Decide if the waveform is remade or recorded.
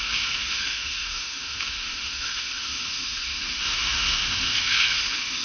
remade